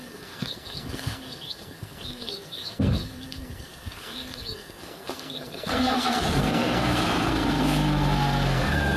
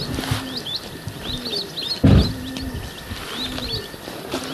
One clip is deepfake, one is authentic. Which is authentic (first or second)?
second